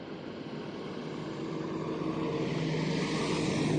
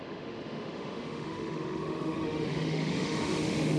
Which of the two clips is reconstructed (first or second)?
second